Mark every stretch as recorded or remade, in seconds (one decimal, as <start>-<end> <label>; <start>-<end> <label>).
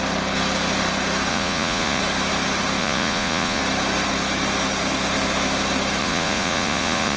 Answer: 0.0-1.3 recorded; 1.3-2.0 remade; 2.0-2.8 recorded; 2.8-3.6 remade; 3.6-6.0 recorded; 6.0-7.2 remade